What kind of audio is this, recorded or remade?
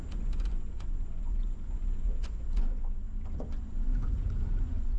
remade